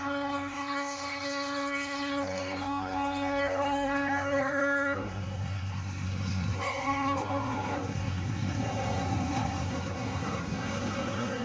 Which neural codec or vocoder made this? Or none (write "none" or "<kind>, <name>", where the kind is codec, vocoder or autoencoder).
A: codec, SNAC